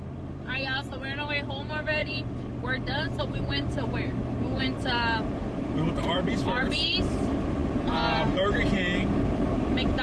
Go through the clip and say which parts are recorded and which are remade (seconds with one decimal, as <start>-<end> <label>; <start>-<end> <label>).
0.0-10.0 recorded